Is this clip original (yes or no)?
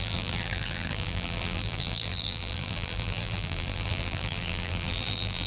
no